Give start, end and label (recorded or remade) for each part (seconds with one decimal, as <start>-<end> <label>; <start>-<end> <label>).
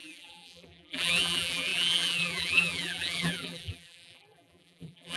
0.0-5.2 remade